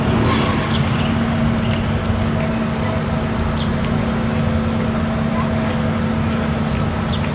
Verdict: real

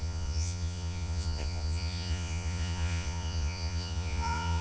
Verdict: fake